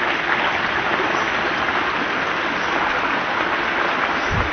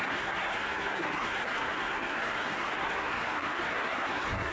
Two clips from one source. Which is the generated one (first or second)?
second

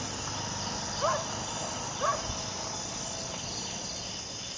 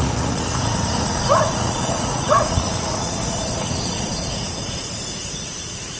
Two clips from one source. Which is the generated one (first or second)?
second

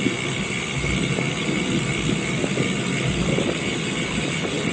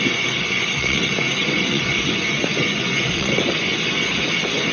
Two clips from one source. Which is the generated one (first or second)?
second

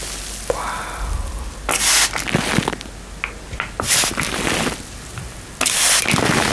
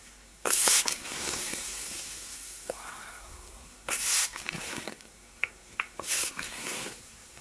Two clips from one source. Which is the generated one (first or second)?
second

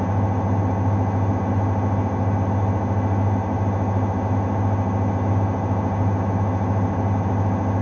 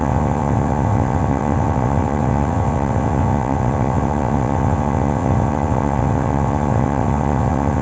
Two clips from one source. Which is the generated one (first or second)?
second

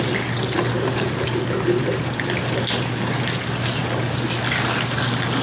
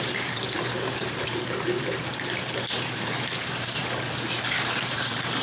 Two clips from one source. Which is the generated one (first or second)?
second